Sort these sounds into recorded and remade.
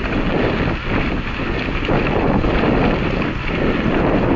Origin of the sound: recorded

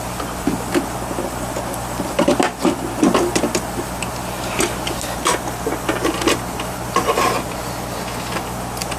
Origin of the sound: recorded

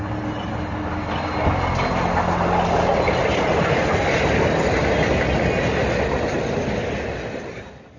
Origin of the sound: recorded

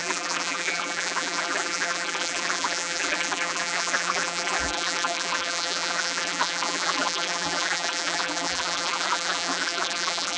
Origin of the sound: remade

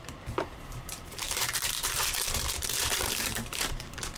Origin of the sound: remade